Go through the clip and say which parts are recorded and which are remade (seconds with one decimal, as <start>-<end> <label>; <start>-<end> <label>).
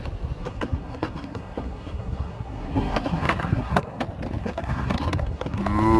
0.0-0.4 recorded; 0.4-4.0 remade; 4.0-4.4 recorded; 4.4-5.6 remade; 5.6-6.0 recorded